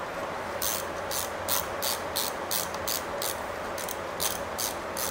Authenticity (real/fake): real